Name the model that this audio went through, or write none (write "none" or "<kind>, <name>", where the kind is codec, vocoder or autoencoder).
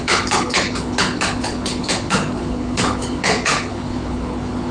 codec, HILCodec